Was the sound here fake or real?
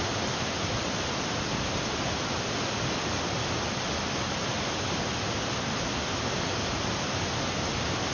real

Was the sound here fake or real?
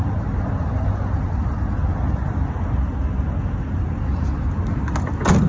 real